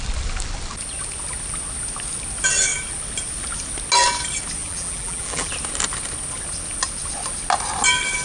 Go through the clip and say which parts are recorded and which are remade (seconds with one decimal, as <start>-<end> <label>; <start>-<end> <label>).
0.0-4.6 recorded; 4.6-5.5 remade; 5.5-8.2 recorded